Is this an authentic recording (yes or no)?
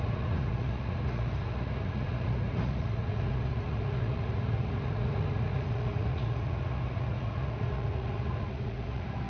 no